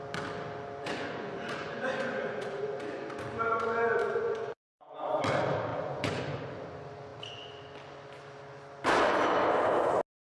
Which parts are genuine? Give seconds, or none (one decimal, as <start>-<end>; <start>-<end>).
0.0-0.8; 3.1-4.0; 4.9-5.7; 6.4-10.2